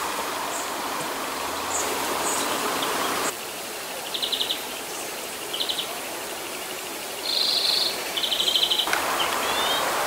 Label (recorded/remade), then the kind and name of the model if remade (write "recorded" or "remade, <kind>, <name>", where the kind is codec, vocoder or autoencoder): remade, vocoder, BigVGAN v2